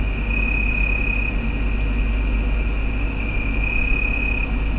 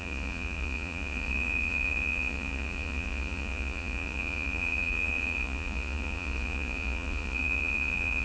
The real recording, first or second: first